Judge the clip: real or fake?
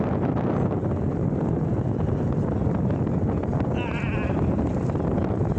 real